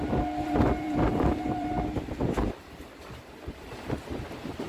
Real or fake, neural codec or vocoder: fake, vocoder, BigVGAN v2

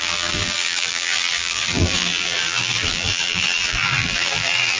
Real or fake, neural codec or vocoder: fake, vocoder, BigVGAN v2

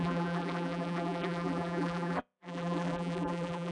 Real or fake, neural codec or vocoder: fake, vocoder, BigVGAN v2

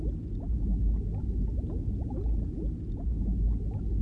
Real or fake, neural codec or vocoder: real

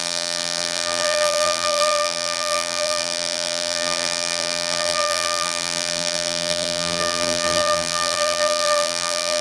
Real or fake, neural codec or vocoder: fake, vocoder, BigVGAN v2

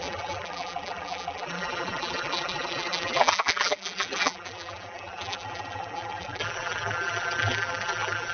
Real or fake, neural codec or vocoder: fake, vocoder, BigVGAN v2